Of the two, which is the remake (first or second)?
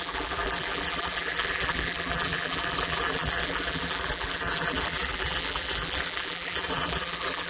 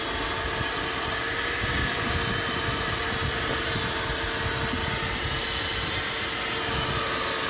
first